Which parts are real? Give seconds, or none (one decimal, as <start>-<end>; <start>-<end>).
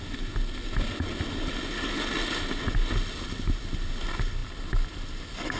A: 0.0-5.6